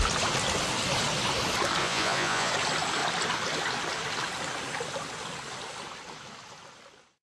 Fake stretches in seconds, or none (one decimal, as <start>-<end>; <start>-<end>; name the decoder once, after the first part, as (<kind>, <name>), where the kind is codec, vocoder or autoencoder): 1.8-2.5 (vocoder, Vocos)